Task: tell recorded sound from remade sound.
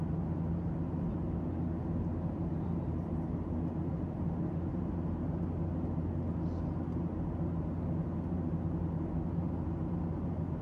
recorded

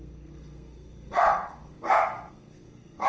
remade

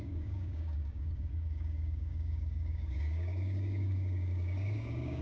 remade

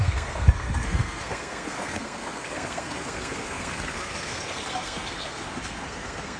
remade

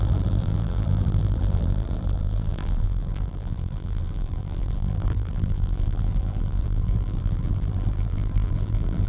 remade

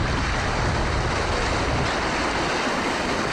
recorded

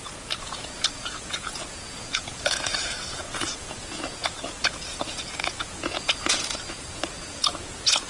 remade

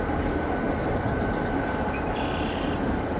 recorded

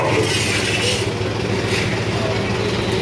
recorded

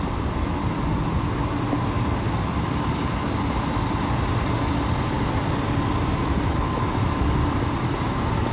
recorded